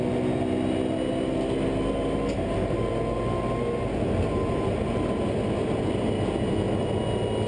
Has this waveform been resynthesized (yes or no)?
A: no